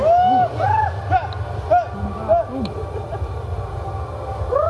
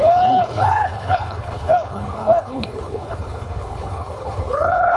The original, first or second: first